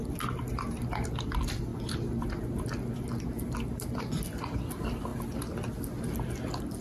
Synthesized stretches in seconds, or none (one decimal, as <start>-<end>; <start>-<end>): none